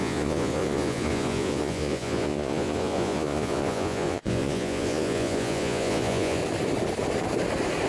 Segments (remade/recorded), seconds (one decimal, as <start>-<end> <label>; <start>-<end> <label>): 0.0-6.4 remade; 6.4-7.9 recorded